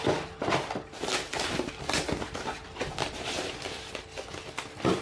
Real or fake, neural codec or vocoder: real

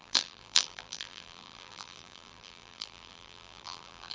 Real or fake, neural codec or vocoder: fake, vocoder, BigVGAN v2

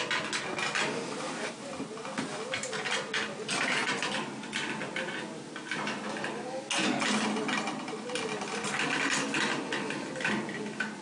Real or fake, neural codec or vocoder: real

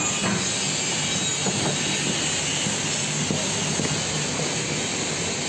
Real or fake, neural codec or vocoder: real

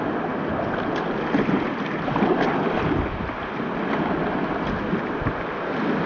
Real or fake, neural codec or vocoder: real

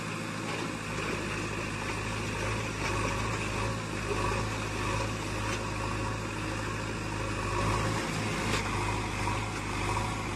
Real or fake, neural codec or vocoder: real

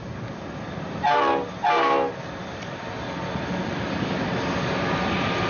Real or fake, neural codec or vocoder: real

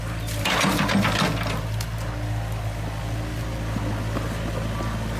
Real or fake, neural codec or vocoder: real